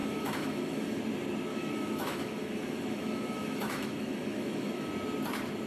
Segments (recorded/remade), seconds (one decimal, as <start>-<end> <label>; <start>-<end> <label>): 0.0-1.0 remade; 1.0-1.5 recorded; 1.5-4.9 remade; 4.9-5.7 recorded